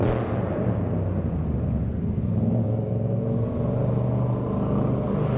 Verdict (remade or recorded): recorded